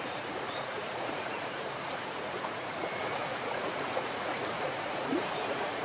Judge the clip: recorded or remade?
remade